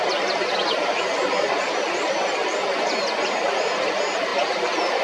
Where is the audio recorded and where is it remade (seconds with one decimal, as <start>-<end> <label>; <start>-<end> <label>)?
0.0-5.0 recorded